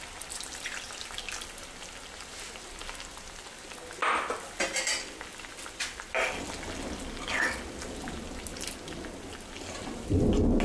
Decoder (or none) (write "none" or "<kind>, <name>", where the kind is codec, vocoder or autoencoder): none